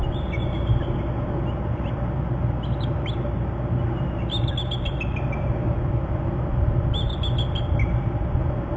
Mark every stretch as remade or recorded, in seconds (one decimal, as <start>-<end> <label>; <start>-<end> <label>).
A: 0.0-8.8 recorded